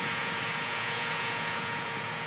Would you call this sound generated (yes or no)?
yes